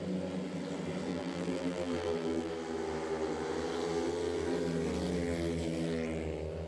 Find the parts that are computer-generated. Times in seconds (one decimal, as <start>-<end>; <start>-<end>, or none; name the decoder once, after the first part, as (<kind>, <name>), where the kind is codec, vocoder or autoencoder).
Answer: 1.1-2.5 (vocoder, BigVGAN v2)